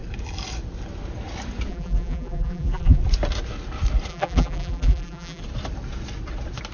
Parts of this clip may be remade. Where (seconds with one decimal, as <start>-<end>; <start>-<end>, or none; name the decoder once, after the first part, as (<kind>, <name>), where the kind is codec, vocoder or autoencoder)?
1.7-3.0 (vocoder, BigVGAN v2); 4.1-5.4